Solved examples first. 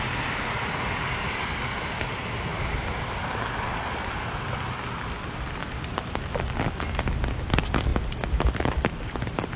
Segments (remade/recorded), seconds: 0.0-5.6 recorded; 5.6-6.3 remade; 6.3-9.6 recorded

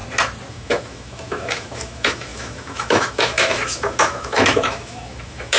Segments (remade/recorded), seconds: 0.0-0.5 recorded; 0.5-5.6 remade

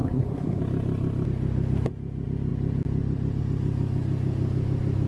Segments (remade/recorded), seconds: 0.0-0.6 remade; 0.6-5.1 recorded

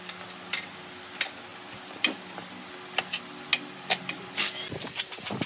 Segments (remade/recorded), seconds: 0.0-1.5 recorded; 1.5-2.6 remade; 2.6-5.5 recorded